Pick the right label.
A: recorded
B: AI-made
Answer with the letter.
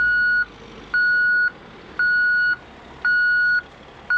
A